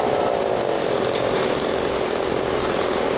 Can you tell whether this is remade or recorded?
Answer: remade